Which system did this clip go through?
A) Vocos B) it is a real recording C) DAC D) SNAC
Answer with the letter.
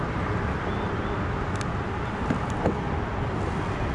B